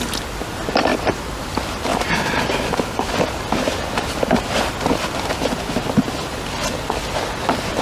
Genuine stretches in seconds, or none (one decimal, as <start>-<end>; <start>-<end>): 0.0-7.8